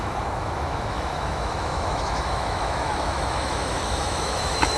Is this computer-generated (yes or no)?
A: yes